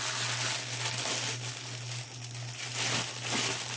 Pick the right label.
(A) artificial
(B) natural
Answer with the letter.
B